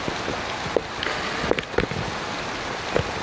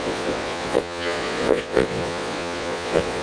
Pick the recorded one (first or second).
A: first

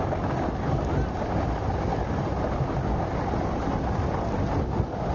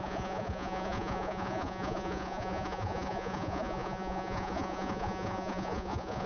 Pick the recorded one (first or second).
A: first